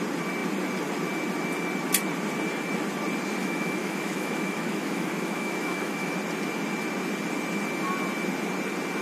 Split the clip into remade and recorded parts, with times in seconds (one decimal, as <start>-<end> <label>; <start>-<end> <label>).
0.0-3.4 recorded; 3.4-6.1 remade; 6.1-9.0 recorded